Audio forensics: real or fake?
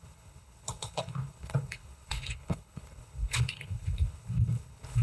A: fake